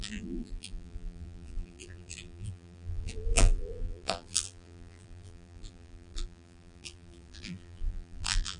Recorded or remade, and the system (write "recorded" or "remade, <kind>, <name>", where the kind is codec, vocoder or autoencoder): remade, vocoder, BigVGAN v2